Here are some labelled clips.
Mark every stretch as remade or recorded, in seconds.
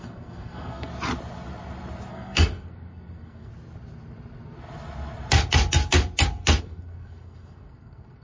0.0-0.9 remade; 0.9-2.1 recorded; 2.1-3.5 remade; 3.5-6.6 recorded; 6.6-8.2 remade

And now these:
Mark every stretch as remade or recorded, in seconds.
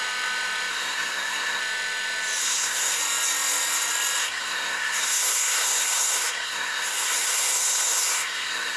0.0-0.7 recorded; 0.7-1.6 remade; 1.6-2.4 recorded; 2.4-3.0 remade; 3.0-4.2 recorded; 4.2-8.8 remade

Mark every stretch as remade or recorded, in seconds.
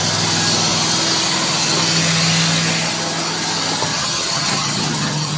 0.0-3.9 recorded; 3.9-5.4 remade